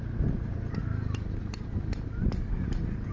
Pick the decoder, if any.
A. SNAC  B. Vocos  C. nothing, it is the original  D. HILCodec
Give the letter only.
C